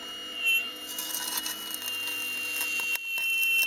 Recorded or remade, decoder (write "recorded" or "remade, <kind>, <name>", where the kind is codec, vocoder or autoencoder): recorded